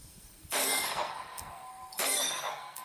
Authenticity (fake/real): fake